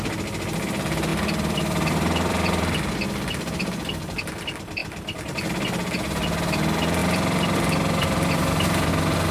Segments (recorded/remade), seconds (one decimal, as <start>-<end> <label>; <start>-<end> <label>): 0.0-1.1 recorded; 1.1-2.9 remade; 2.9-4.8 recorded; 4.8-5.5 remade; 5.5-7.0 recorded; 7.0-8.9 remade; 8.9-9.3 recorded